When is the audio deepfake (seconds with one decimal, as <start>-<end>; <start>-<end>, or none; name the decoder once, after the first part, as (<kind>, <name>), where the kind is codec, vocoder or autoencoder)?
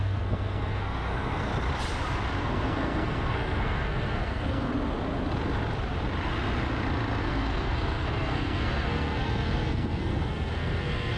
0.0-1.5 (codec, SNAC); 2.4-4.7; 7.2-11.2